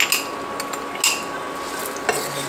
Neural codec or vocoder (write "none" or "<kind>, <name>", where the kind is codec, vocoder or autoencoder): none